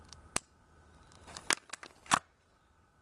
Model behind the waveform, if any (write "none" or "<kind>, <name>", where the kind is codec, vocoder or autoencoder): none